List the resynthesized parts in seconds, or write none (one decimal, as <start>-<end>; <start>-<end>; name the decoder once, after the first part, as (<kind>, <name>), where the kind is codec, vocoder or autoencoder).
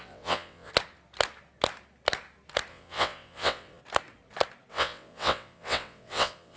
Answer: 0.0-0.7 (vocoder, WaveNeXt); 2.7-3.8; 4.7-6.6